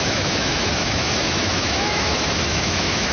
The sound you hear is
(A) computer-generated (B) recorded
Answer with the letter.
A